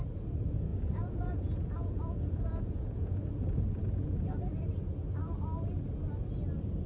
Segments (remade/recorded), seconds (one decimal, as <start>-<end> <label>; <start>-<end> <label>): 0.0-0.7 recorded; 0.7-4.4 remade; 4.4-6.9 recorded